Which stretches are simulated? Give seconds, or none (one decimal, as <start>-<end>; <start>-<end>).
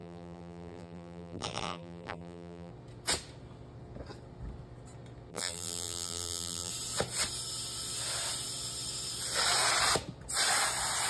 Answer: 0.0-2.7; 5.3-6.7